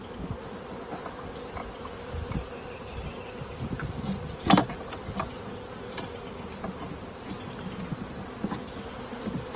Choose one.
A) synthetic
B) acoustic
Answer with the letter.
B